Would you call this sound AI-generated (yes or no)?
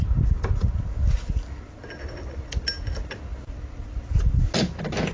no